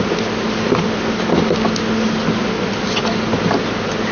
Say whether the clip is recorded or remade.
recorded